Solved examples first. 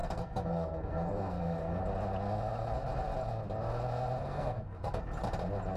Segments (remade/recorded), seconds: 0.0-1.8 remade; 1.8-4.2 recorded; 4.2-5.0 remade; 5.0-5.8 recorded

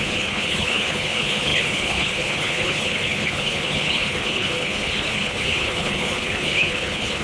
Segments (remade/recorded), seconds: 0.0-7.2 remade